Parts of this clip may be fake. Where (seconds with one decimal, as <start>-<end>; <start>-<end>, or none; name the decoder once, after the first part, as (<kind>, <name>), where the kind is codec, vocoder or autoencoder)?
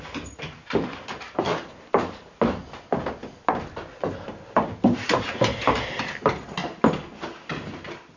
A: none